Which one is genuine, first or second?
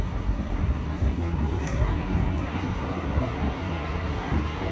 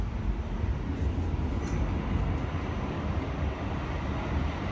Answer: second